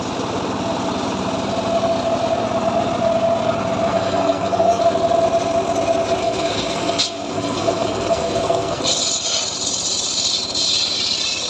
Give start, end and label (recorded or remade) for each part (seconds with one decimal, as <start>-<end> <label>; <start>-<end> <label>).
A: 0.0-3.9 recorded; 3.9-4.8 remade; 4.8-6.2 recorded; 6.2-8.8 remade; 8.8-11.5 recorded